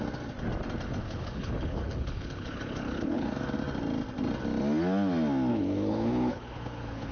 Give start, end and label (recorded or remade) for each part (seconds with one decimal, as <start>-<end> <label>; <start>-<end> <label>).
0.0-1.0 recorded; 1.0-3.3 remade; 3.3-5.5 recorded; 5.5-7.1 remade